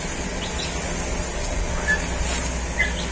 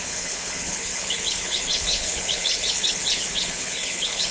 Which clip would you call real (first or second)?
first